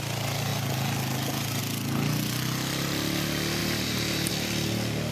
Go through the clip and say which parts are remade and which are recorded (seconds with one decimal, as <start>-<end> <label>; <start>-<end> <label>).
0.0-3.6 recorded; 3.6-4.3 remade; 4.3-5.1 recorded